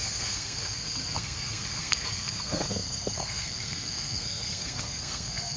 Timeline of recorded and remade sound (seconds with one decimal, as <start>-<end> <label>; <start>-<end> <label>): 0.0-5.6 remade